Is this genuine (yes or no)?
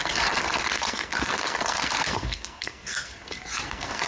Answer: no